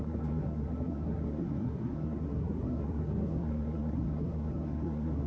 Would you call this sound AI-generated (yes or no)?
yes